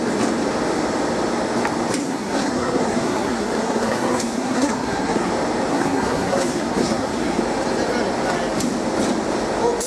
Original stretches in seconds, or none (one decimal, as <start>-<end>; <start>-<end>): 0.0-2.0; 5.3-5.7; 7.4-9.9